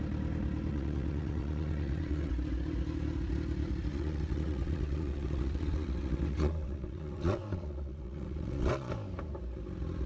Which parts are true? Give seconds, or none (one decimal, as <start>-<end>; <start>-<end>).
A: 0.0-0.7; 2.3-3.9; 8.9-10.1